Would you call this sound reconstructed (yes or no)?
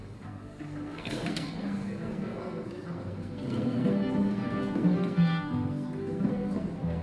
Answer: yes